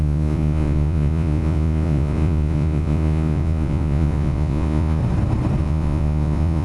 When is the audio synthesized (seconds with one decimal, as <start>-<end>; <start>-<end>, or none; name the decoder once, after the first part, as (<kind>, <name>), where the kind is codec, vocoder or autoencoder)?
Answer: 0.0-5.0 (vocoder, Vocos); 5.6-6.6